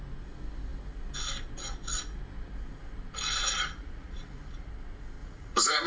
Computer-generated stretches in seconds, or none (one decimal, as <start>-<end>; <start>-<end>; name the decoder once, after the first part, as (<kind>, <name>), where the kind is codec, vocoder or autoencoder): 3.4-4.7 (vocoder, Vocos); 5.2-5.9